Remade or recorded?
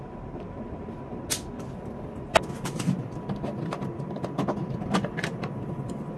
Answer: recorded